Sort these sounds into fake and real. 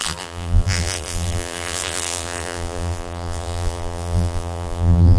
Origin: fake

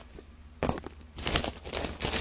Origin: real